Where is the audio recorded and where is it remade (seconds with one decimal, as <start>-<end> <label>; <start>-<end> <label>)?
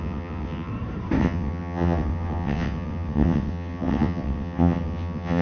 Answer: 0.0-0.7 remade; 0.7-1.2 recorded; 1.2-5.4 remade